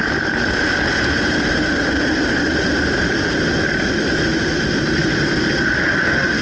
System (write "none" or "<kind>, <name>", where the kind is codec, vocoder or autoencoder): none